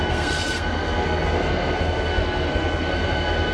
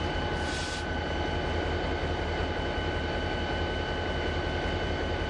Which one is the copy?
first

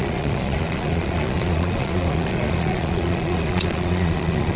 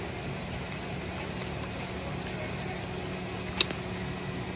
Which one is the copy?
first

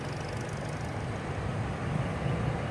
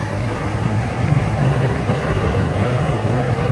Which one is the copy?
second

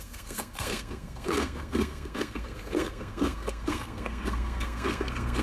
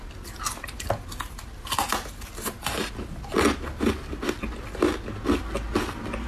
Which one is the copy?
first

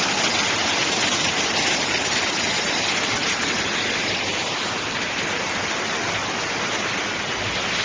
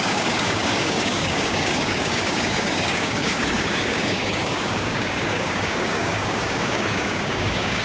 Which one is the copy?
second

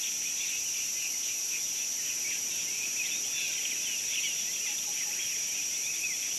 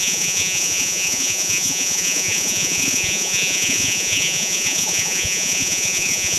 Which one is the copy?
second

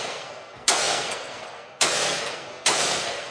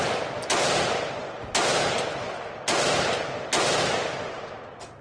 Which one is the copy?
first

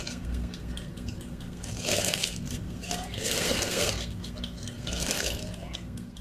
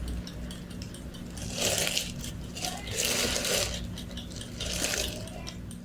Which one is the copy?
first